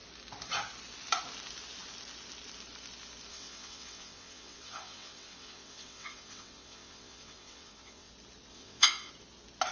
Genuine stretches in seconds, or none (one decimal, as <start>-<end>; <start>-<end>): 0.0-3.3; 8.1-8.5; 9.1-9.7